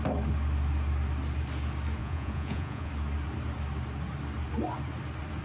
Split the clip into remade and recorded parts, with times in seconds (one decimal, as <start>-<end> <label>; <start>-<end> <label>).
0.0-2.0 recorded; 2.0-2.9 remade; 2.9-5.4 recorded